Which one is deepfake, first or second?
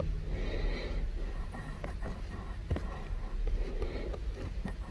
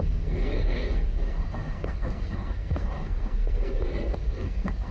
second